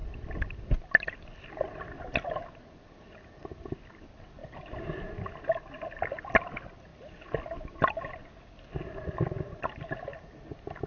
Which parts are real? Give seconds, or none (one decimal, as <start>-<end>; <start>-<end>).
0.0-10.9

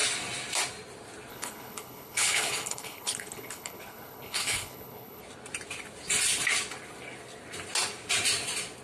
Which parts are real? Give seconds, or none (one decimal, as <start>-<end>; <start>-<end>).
0.0-1.3; 5.2-8.8

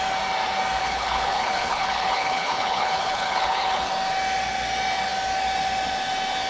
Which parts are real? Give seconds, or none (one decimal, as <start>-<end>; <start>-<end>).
0.0-0.8; 3.9-6.5